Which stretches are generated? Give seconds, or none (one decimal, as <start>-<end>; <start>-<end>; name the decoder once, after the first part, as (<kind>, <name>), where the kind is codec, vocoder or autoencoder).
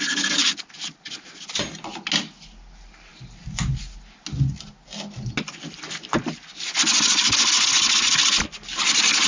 none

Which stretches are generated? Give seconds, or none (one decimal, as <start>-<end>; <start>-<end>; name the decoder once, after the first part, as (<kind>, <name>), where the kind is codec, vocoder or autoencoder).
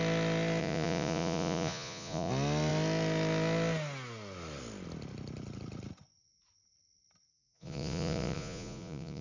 0.6-2.3 (vocoder, Vocos); 7.3-9.2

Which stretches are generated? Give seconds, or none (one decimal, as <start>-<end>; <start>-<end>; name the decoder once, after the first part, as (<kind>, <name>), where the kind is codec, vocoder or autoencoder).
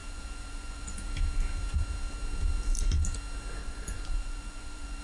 0.0-1.1 (vocoder, Vocos); 3.6-5.0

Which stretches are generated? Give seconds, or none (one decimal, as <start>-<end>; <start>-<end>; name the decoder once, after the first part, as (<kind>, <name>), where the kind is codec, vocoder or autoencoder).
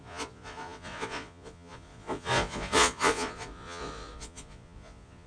0.0-5.3 (vocoder, Vocos)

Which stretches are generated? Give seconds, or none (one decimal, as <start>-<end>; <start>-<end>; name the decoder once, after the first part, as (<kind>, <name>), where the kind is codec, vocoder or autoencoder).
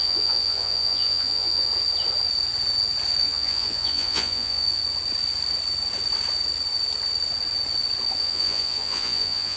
0.0-1.7 (vocoder, Vocos); 3.2-4.8; 8.2-9.6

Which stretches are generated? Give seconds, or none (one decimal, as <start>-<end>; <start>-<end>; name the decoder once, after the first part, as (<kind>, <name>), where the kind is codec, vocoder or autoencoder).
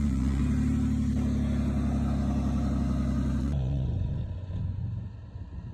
0.0-0.4 (vocoder, Vocos); 3.4-4.8